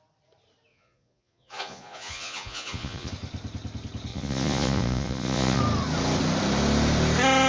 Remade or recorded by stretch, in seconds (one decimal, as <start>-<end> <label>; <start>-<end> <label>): 0.0-0.7 recorded; 0.7-3.1 remade; 3.1-4.1 recorded; 4.1-5.6 remade; 5.6-7.5 recorded